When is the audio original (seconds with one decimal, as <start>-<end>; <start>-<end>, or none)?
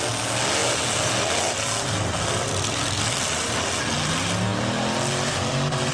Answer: 0.0-5.9